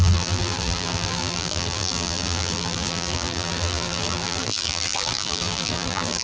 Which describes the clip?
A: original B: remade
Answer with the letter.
B